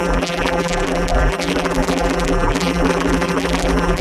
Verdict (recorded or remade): remade